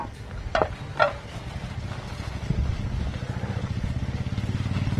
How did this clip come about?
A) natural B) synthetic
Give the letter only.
A